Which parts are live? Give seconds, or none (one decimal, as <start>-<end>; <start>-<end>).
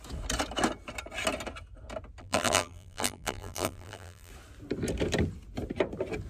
0.0-2.2; 4.3-6.3